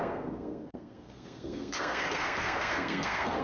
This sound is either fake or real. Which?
fake